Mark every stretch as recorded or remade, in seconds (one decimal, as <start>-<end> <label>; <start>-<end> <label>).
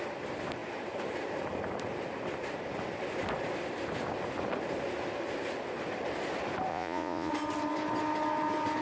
0.0-6.7 recorded; 6.7-7.3 remade; 7.3-8.8 recorded